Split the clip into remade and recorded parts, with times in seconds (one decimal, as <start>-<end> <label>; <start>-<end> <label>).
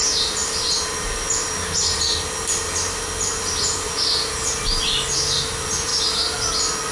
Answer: 0.0-5.9 remade; 5.9-6.9 recorded